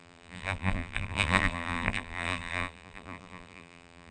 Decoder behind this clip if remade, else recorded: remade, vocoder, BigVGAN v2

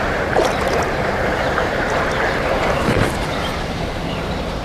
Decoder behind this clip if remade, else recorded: remade, vocoder, BigVGAN v2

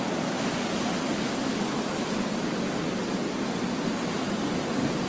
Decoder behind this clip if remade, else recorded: recorded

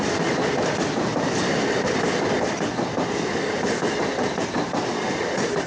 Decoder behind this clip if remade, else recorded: remade, vocoder, BigVGAN v2